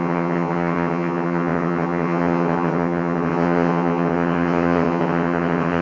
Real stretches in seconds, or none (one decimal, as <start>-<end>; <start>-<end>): none